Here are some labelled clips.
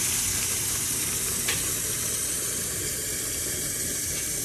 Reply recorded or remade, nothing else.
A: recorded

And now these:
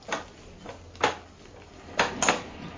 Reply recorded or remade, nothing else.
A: recorded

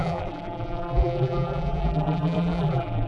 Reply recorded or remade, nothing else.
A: remade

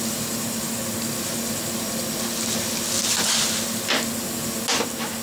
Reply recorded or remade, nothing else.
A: recorded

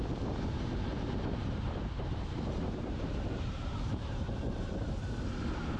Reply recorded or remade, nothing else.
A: remade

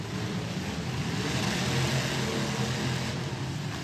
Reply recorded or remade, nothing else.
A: recorded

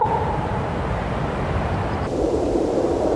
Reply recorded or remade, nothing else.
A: remade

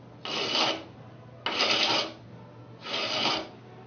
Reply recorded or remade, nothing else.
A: recorded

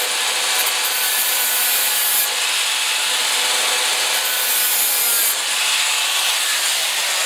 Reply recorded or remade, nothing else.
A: recorded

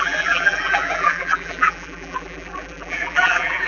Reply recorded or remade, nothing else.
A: remade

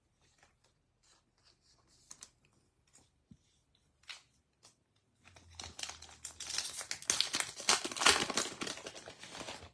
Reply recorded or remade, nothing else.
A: recorded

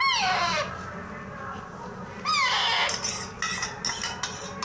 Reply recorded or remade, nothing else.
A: recorded